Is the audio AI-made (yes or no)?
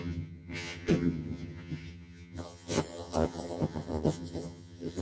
yes